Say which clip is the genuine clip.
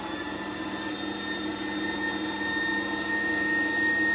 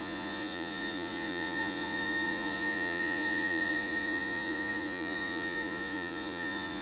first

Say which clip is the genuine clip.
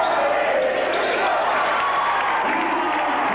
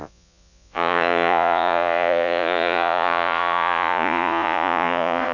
first